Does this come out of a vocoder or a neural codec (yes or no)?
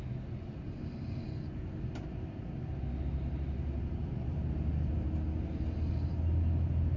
no